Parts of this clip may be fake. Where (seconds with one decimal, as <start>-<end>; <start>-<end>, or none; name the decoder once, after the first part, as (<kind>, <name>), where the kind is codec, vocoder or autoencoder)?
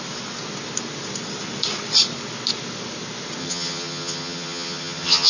3.4-5.3 (vocoder, HiFi-GAN)